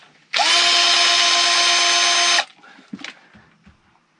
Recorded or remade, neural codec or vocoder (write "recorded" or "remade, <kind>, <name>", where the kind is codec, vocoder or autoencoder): recorded